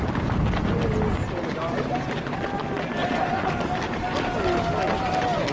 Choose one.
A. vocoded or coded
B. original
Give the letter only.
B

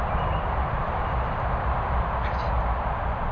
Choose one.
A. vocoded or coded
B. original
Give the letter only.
A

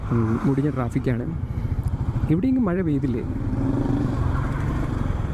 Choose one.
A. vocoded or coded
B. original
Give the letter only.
A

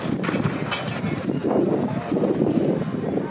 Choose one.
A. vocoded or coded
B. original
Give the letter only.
B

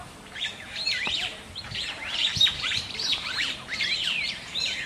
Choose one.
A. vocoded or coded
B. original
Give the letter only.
A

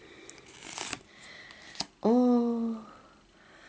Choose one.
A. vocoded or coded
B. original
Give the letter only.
B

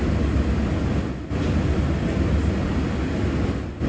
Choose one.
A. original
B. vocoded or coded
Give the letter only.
A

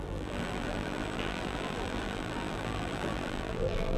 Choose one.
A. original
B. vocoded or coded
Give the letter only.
B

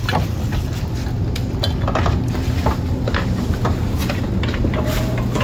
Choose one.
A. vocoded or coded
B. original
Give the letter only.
B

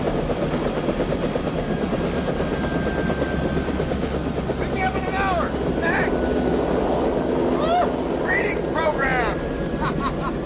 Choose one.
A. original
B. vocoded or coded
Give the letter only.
A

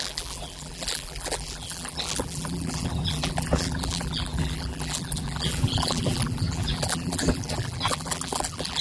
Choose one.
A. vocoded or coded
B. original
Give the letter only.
A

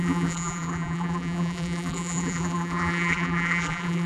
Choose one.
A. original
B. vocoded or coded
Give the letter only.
B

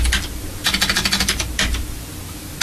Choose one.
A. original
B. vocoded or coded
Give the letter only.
A